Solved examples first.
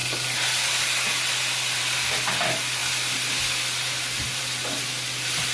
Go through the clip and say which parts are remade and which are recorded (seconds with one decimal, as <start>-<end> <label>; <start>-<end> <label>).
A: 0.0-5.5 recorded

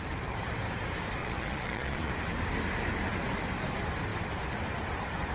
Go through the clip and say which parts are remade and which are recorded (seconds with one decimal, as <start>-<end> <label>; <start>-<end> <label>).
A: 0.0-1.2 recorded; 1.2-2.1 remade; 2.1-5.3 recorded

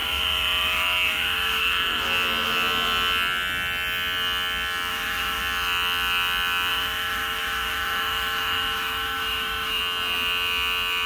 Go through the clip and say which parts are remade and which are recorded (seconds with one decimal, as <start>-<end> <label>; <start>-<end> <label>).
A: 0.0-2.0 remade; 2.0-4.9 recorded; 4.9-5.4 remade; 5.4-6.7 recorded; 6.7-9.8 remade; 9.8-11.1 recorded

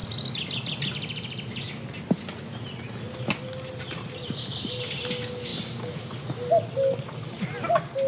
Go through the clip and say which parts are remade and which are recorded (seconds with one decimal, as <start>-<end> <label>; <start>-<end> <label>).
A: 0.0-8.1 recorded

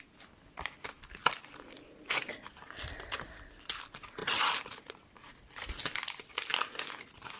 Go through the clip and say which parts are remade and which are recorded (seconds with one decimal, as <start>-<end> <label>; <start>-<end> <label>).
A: 0.0-7.4 recorded

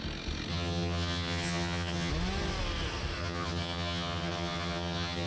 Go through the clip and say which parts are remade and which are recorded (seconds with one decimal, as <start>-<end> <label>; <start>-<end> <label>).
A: 0.0-0.5 recorded; 0.5-2.1 remade; 2.1-3.2 recorded; 3.2-5.3 remade